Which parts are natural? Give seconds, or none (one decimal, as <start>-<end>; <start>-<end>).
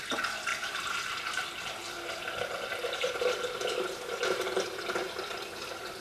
0.0-6.0